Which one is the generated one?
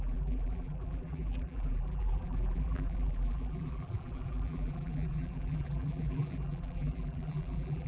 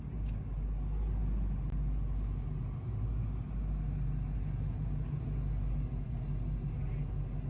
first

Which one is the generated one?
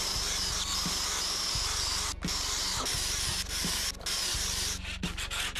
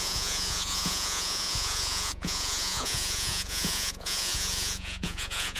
second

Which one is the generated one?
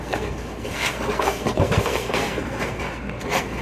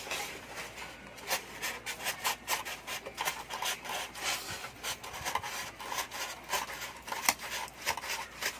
first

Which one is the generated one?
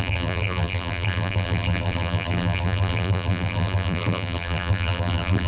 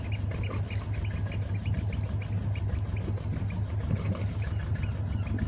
first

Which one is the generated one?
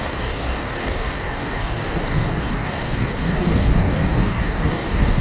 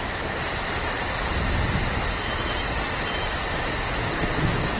first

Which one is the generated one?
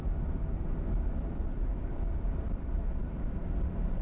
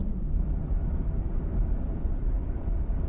second